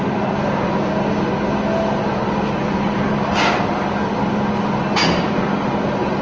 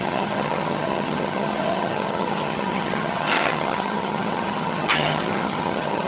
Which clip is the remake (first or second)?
second